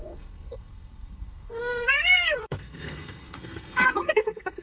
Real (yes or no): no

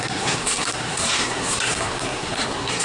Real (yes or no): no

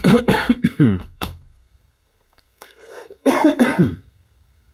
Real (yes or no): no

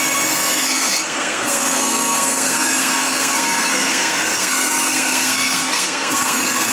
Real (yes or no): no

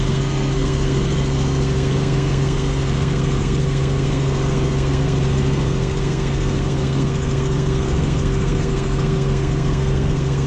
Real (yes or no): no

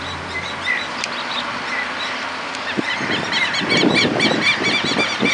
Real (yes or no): yes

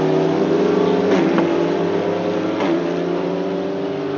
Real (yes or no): yes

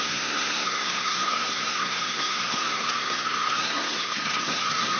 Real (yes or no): no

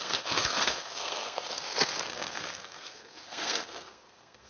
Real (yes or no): no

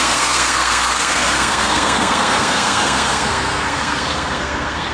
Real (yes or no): no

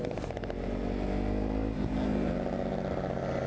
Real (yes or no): yes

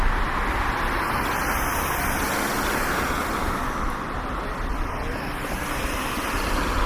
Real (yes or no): yes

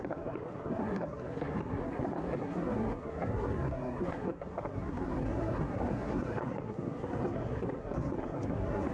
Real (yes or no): no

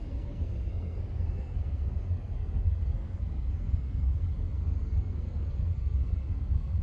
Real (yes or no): no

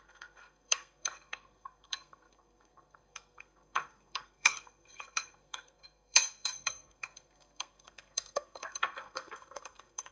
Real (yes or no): no